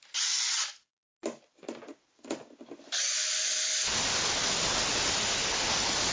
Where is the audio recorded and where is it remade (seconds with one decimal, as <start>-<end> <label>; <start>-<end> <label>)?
0.0-6.1 recorded